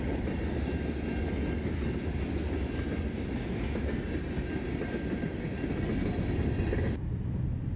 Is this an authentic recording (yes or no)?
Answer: yes